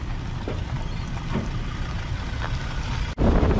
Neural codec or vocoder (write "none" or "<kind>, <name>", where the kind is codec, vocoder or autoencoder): vocoder, BigVGAN v2